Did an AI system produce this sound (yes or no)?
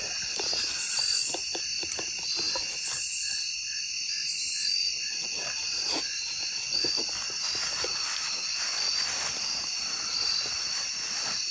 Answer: no